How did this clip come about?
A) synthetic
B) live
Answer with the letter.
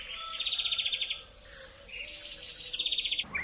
A